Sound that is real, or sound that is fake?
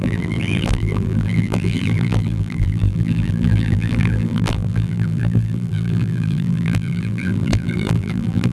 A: fake